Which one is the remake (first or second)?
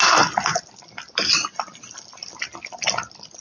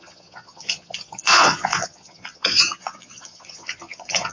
second